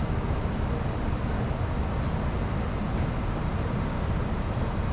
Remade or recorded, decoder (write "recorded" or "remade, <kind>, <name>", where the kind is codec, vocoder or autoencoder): recorded